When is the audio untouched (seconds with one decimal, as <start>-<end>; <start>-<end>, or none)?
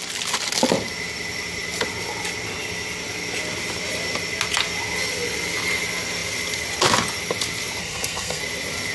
0.0-7.8; 8.4-8.9